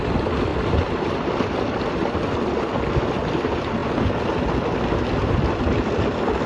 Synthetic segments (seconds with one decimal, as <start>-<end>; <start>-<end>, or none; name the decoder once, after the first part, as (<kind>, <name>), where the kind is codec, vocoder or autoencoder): 0.5-2.8 (vocoder, BigVGAN v2)